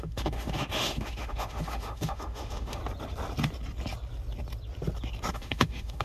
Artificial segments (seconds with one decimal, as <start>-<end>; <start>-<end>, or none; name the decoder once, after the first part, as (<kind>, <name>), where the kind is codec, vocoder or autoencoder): 0.0-2.8 (autoencoder, DAC-VAE); 5.3-6.0